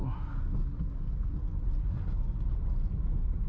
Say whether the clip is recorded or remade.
recorded